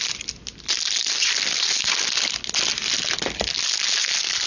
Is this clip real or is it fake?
real